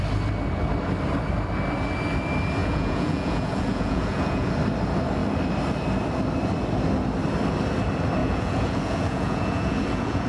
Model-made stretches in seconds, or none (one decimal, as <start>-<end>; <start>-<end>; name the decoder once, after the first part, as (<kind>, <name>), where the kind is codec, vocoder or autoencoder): 2.6-4.5 (vocoder, Vocos); 8.2-10.3